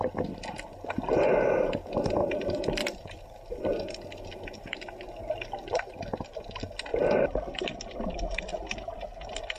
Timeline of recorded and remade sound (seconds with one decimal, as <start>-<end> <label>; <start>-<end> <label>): 0.0-2.2 recorded; 2.2-3.6 remade; 3.6-6.9 recorded; 6.9-8.4 remade; 8.4-9.6 recorded